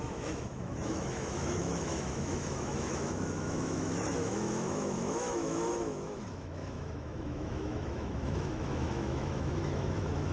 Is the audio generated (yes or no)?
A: yes